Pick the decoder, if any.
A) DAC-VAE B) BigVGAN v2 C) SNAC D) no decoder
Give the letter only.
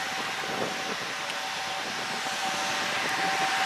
D